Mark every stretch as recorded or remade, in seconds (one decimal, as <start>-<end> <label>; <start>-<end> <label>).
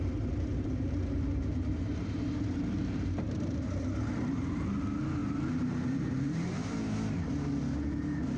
0.0-0.5 recorded; 0.5-4.6 remade; 4.6-5.2 recorded; 5.2-7.6 remade; 7.6-8.4 recorded